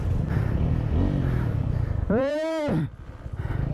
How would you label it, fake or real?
fake